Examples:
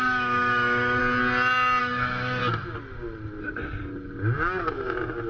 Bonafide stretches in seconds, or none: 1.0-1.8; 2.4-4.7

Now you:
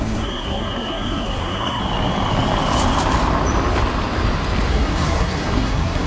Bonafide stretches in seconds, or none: 1.8-4.7